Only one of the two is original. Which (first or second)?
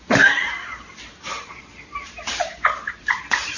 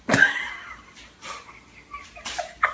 second